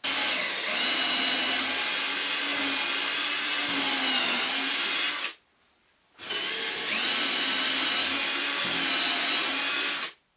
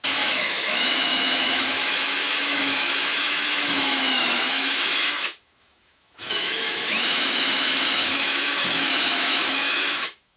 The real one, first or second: first